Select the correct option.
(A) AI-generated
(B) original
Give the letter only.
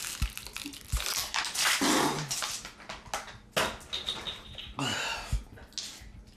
B